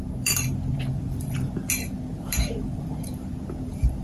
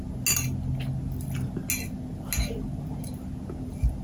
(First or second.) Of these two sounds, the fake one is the first